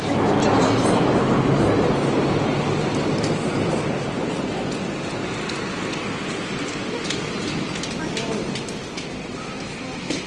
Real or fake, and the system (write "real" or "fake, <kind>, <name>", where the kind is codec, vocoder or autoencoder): real